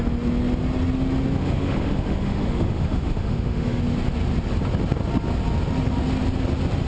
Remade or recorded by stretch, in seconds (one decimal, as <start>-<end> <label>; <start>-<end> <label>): 0.0-1.4 recorded; 1.4-3.8 remade; 3.8-6.9 recorded